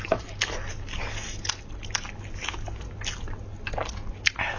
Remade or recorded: recorded